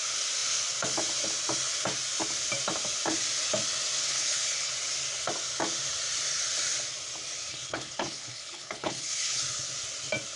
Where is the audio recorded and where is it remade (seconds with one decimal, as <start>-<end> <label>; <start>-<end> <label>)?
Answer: 0.0-4.0 recorded; 4.0-4.7 remade; 4.7-7.5 recorded; 7.5-9.4 remade; 9.4-10.4 recorded